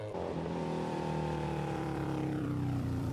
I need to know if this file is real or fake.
fake